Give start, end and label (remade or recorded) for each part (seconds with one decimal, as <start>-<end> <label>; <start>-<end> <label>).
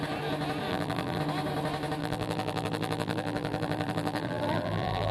0.0-0.7 recorded; 0.7-1.2 remade; 1.2-2.0 recorded; 2.0-5.1 remade